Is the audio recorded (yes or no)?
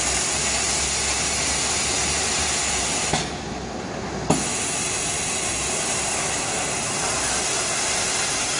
yes